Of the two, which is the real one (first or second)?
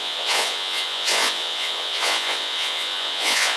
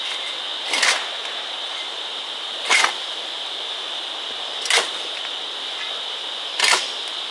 second